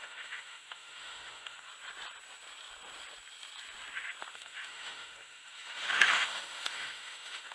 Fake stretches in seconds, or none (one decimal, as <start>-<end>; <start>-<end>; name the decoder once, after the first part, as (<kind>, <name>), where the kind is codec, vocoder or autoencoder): 0.0-1.7 (autoencoder, DAC-VAE); 4.3-7.5